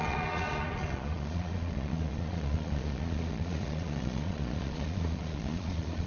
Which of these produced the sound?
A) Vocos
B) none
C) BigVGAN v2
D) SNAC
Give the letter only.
A